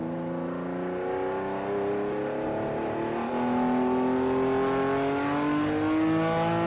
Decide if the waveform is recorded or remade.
recorded